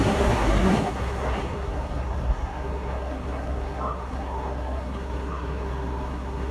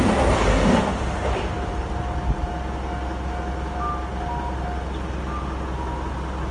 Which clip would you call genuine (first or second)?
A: second